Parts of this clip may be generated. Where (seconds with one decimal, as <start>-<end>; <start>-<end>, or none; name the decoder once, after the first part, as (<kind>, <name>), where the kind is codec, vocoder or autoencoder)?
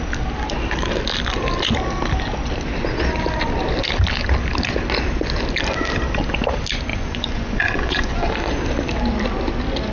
6.9-8.3 (vocoder, Vocos)